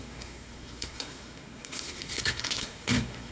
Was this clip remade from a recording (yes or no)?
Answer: yes